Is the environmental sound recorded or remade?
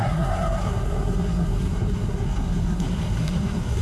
remade